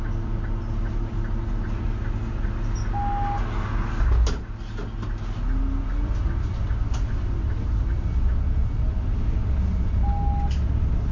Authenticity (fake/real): real